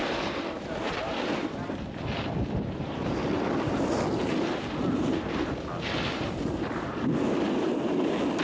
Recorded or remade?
recorded